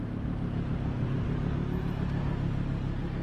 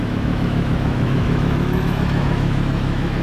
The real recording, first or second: first